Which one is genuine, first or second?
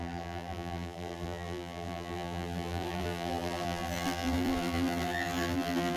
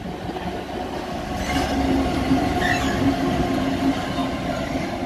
second